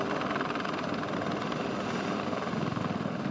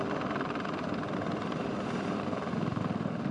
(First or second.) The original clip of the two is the first